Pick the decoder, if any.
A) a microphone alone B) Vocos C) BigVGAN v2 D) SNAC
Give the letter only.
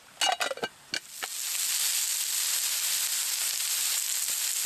A